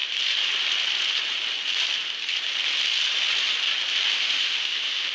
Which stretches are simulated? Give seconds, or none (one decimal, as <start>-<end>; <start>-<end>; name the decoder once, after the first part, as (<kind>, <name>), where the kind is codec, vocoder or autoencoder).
4.1-5.1 (autoencoder, DAC-VAE)